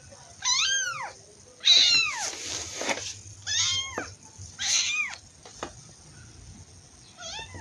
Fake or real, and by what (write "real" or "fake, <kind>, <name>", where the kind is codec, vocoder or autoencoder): real